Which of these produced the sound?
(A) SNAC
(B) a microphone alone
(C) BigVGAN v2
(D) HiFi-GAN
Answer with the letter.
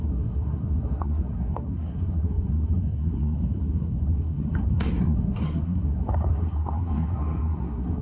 A